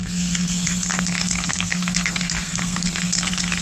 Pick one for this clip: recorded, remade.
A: remade